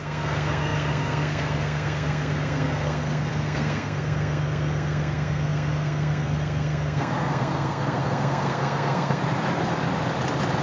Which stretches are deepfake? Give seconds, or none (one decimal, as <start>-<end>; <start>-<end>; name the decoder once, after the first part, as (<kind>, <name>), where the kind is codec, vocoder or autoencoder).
0.0-9.2 (codec, SNAC)